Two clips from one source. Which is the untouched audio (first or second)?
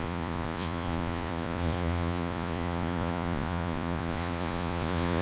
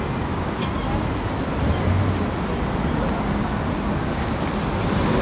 second